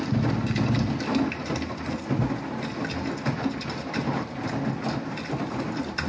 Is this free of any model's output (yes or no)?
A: yes